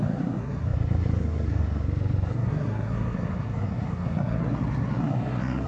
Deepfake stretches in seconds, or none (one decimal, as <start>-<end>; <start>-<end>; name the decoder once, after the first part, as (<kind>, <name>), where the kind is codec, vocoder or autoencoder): 0.0-5.7 (codec, SNAC)